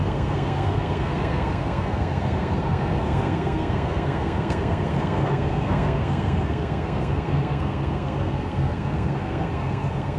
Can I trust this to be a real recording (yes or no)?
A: no